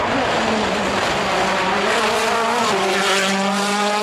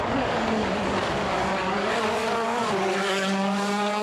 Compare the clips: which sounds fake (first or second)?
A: second